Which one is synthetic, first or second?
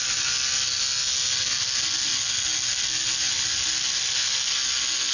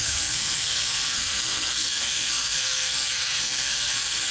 second